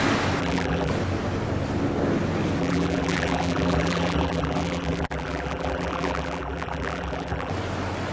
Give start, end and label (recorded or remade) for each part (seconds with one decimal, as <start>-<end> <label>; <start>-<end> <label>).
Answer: 0.0-0.4 recorded; 0.4-0.9 remade; 0.9-2.6 recorded; 2.6-7.5 remade; 7.5-8.1 recorded